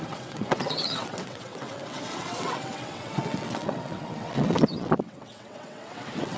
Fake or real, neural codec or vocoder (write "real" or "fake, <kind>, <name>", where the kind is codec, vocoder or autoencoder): fake, vocoder, WaveNeXt